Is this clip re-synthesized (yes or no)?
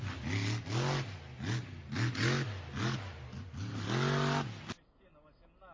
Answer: no